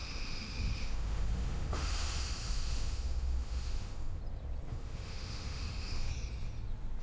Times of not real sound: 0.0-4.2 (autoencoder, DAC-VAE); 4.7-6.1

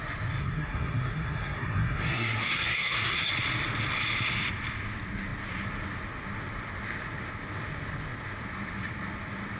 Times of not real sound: 0.4-3.3 (codec, SNAC)

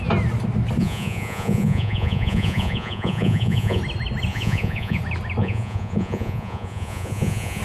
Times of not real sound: 0.8-3.8 (vocoder, Vocos); 4.3-5.0; 5.4-7.6

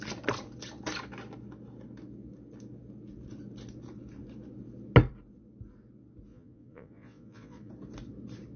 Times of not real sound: 6.3-7.7 (vocoder, Vocos)

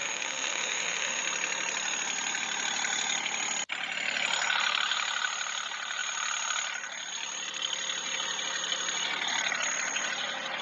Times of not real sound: 0.0-1.2 (autoencoder, DAC-VAE)

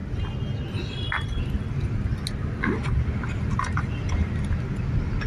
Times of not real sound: none